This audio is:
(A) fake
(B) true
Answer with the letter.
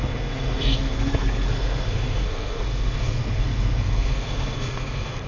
A